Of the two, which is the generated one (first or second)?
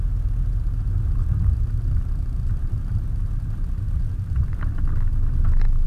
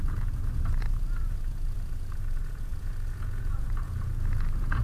second